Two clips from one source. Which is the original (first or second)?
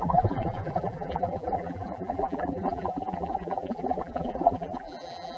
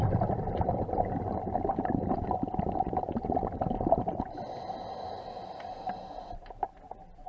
second